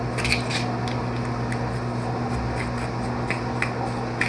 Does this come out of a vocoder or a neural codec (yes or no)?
no